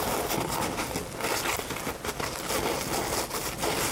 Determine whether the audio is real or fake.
real